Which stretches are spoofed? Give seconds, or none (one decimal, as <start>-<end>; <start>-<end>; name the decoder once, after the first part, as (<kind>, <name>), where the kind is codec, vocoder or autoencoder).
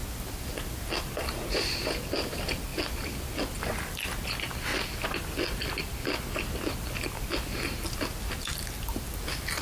2.7-3.3 (vocoder, BigVGAN v2)